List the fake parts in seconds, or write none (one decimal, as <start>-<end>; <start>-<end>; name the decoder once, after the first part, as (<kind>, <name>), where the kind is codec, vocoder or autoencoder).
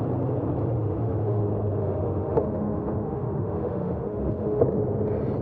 0.6-1.4 (autoencoder, DAC-VAE); 1.8-4.6